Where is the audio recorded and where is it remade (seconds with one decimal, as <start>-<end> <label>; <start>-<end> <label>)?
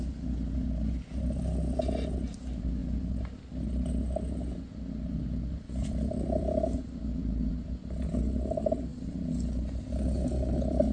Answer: 0.0-5.5 recorded; 5.5-7.5 remade; 7.5-10.9 recorded